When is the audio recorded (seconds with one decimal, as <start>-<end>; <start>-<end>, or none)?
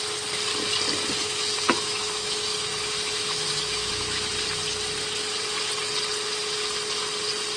0.0-1.2; 4.3-7.6